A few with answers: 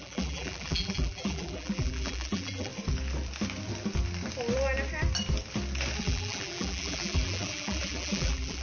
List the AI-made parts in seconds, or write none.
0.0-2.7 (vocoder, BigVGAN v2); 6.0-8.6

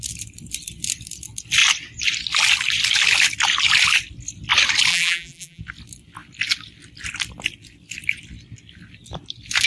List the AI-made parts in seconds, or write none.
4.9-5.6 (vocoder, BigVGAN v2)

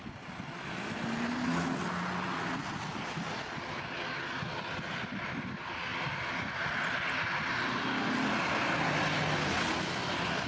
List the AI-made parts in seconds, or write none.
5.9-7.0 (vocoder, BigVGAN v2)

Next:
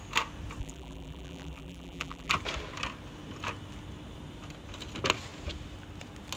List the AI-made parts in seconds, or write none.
0.6-2.3 (vocoder, BigVGAN v2)

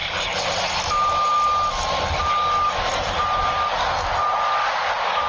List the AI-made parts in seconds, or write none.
0.0-0.7 (vocoder, BigVGAN v2)

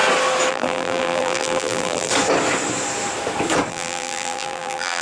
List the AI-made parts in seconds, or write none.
0.5-2.1 (vocoder, BigVGAN v2); 3.7-5.0

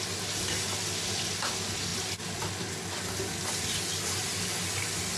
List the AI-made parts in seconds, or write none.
none